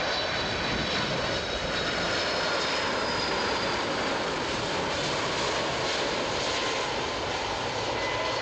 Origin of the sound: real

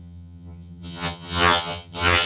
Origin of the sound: fake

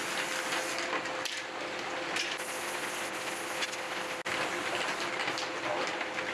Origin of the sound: real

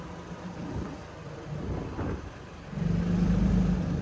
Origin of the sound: fake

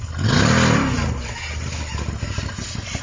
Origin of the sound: real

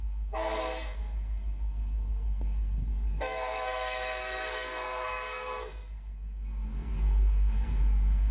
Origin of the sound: fake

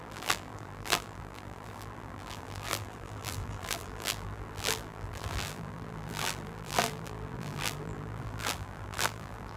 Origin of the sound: fake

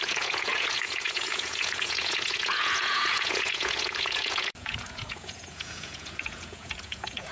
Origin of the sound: fake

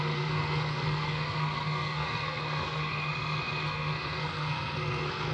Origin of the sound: fake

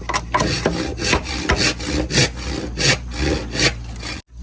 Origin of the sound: real